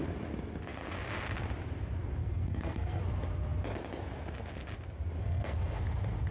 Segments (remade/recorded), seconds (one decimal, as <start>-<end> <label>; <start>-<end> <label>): 0.0-2.2 recorded; 2.2-3.0 remade; 3.0-5.2 recorded; 5.2-5.8 remade; 5.8-6.3 recorded